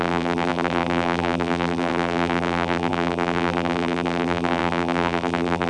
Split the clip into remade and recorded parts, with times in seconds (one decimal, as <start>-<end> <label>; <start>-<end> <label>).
0.0-5.7 remade